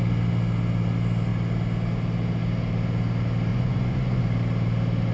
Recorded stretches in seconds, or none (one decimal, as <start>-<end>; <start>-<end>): 0.0-3.5; 4.2-5.1